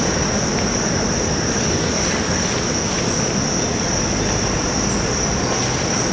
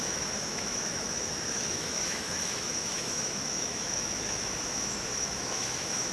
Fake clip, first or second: second